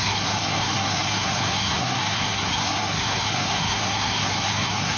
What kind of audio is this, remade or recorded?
remade